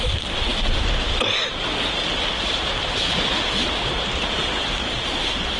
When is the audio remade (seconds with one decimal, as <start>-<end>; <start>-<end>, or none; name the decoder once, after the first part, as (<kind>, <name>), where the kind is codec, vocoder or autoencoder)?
none